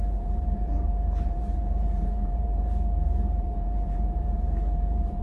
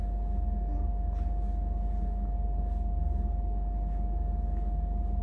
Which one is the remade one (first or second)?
first